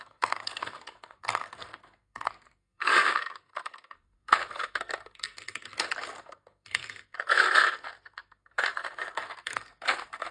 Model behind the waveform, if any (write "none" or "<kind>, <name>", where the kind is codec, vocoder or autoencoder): codec, SNAC